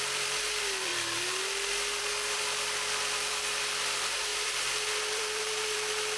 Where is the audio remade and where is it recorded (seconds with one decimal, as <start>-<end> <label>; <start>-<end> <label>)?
0.0-0.9 remade; 0.9-2.0 recorded; 2.0-6.2 remade